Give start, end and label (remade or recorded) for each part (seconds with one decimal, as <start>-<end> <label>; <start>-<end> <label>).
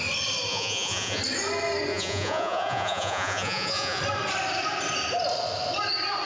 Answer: 0.0-0.5 recorded; 0.5-1.2 remade; 1.2-1.9 recorded; 1.9-4.0 remade; 4.0-6.3 recorded